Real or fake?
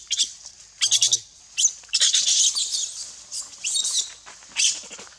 real